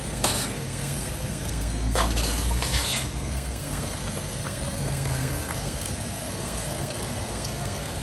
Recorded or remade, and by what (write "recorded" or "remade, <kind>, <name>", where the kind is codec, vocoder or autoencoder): remade, codec, SNAC